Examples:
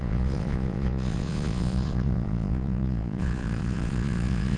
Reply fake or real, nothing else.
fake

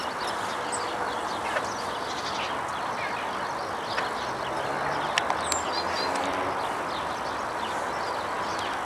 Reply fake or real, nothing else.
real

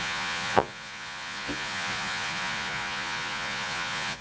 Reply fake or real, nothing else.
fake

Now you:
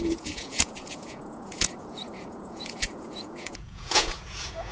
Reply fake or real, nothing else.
fake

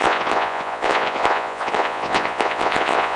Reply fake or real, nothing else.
fake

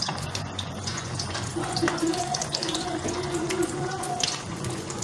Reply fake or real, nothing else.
fake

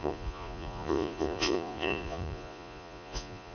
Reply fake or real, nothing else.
fake